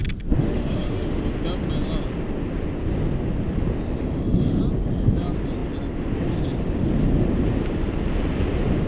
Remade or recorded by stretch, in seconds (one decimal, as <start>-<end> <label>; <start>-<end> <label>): 0.0-0.4 recorded; 0.4-1.2 remade; 1.2-4.0 recorded; 4.0-4.6 remade; 4.6-8.9 recorded